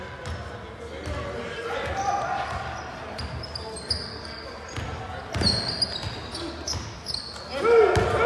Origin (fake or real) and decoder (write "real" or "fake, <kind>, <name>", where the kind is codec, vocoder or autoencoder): real